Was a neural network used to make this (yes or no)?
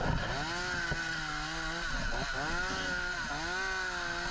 no